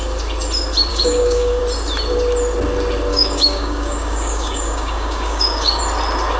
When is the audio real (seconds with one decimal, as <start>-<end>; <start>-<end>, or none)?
0.0-0.9; 1.6-3.1; 5.8-6.4

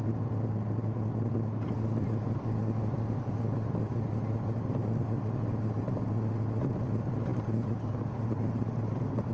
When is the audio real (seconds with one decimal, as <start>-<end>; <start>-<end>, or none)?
0.0-7.3

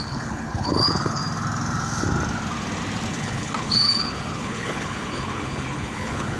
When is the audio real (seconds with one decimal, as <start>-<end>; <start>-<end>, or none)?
1.2-3.1

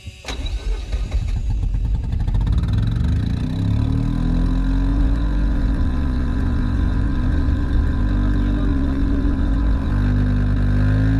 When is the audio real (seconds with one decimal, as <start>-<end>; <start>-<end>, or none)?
0.0-4.9; 8.0-8.7; 9.9-11.2

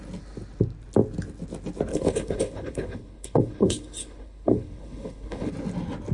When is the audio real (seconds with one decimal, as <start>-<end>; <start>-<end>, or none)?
0.0-1.9; 5.5-6.1

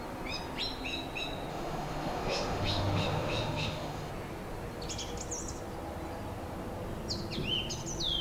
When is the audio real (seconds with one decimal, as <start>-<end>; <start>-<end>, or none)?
0.0-1.5; 4.1-8.2

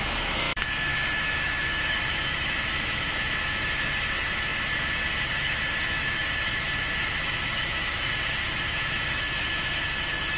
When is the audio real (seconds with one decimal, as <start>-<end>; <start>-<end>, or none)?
none